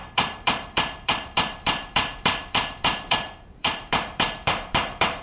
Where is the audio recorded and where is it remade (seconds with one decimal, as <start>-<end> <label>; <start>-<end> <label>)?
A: 0.0-5.2 remade